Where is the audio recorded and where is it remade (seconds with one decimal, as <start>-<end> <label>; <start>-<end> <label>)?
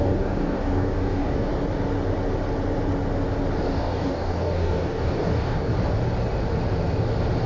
0.0-1.5 remade; 1.5-3.6 recorded; 3.6-5.7 remade; 5.7-7.5 recorded